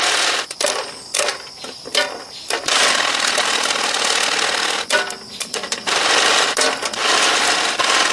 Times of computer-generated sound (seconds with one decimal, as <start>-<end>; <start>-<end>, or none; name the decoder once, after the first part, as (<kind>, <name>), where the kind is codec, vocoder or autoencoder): none